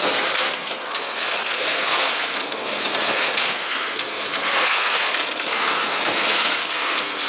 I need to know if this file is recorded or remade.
remade